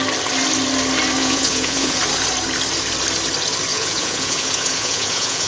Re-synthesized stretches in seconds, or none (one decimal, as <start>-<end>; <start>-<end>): 1.2-2.0; 3.7-5.5